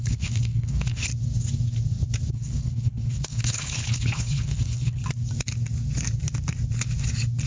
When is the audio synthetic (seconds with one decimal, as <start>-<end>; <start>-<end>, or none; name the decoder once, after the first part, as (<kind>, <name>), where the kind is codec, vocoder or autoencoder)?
0.0-1.1 (codec, HILCodec); 2.3-5.0